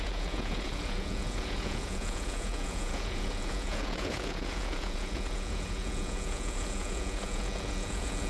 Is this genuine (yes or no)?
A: no